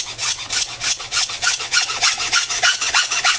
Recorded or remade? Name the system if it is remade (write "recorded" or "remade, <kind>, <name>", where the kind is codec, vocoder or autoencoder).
remade, vocoder, Vocos